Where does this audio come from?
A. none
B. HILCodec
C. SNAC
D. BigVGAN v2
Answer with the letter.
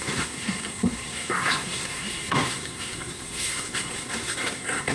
C